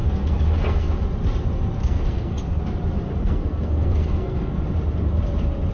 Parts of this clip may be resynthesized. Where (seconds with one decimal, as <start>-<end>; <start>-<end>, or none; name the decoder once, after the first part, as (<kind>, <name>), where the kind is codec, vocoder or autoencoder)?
0.0-0.9 (codec, SNAC); 1.8-2.6; 3.2-4.6